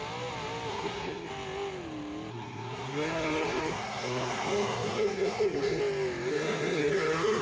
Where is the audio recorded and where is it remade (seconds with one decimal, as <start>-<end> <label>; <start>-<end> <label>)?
0.0-0.7 recorded; 0.7-1.3 remade; 1.3-2.3 recorded; 2.3-5.8 remade; 5.8-6.3 recorded; 6.3-7.4 remade